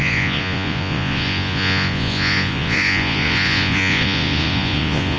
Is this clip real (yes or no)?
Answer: no